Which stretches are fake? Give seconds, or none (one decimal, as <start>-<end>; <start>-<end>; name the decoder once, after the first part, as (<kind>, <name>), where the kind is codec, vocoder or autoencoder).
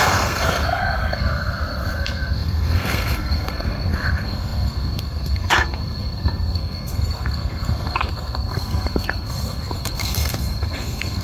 0.0-11.2 (codec, SNAC)